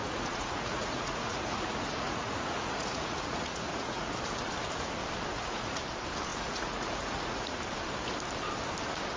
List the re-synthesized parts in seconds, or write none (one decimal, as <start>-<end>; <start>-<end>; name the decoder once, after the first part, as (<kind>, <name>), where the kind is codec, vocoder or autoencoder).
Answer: 0.0-4.1 (vocoder, Vocos); 5.3-5.8; 6.3-7.6